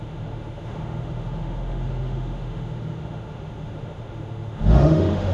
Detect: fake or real fake